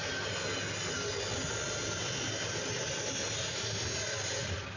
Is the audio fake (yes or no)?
no